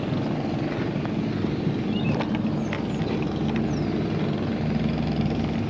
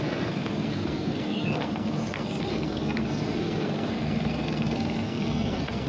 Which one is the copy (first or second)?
second